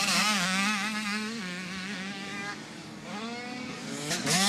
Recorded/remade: remade